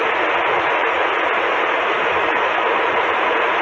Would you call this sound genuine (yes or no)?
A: no